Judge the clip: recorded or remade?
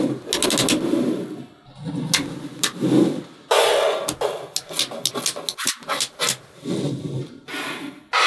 recorded